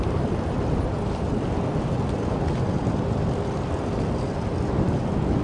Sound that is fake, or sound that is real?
real